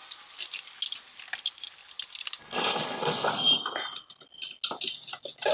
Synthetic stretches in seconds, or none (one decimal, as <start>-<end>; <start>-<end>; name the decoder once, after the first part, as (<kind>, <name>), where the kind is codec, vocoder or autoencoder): 2.4-3.3 (codec, HILCodec)